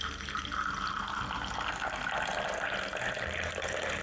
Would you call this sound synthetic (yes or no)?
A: yes